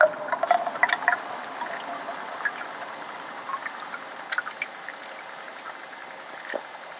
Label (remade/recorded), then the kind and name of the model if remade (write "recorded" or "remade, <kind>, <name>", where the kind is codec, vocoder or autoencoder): recorded